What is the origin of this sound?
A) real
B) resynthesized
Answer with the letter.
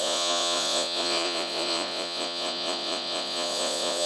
B